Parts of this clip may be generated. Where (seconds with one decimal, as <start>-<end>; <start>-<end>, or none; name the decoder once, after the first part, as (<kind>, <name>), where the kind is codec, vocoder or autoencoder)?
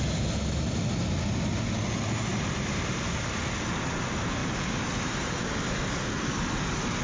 2.3-3.3 (vocoder, BigVGAN v2); 4.4-5.4